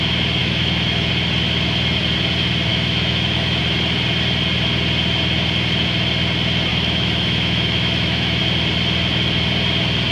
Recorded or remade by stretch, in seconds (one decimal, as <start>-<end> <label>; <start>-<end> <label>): 0.0-0.4 recorded; 0.4-1.1 remade; 1.1-2.7 recorded; 2.7-3.6 remade; 3.6-6.7 recorded; 6.7-8.4 remade; 8.4-10.1 recorded